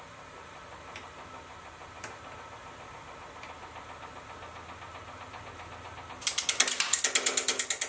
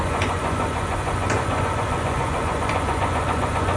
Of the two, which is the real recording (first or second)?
first